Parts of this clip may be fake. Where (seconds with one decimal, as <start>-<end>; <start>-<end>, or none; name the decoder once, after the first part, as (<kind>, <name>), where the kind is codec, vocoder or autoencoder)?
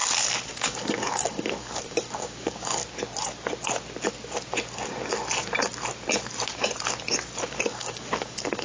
0.5-2.8 (codec, DAC); 7.5-8.6